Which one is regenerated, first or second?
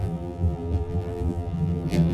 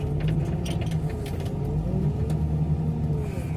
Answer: first